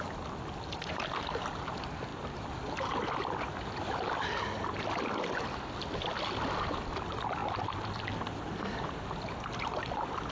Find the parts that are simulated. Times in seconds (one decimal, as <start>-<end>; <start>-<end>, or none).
2.1-3.5; 7.4-8.0